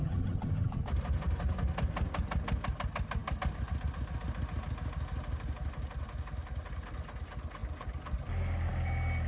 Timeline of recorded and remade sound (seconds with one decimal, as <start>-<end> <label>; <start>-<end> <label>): 0.0-0.8 remade; 0.8-9.3 recorded